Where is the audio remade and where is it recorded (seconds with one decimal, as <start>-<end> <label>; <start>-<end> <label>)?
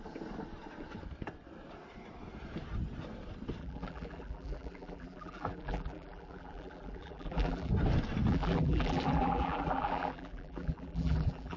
0.0-3.6 recorded; 3.6-7.7 remade; 7.7-8.3 recorded; 8.3-11.6 remade